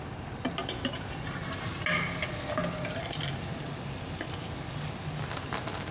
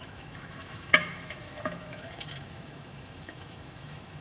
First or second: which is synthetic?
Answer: second